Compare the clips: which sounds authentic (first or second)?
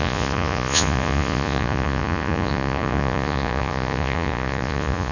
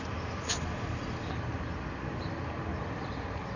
second